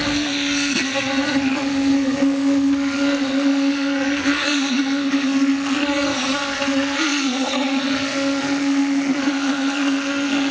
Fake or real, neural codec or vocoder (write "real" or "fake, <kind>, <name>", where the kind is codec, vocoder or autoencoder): fake, codec, SNAC